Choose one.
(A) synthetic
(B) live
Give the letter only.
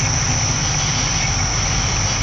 B